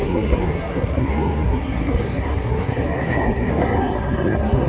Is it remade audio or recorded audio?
remade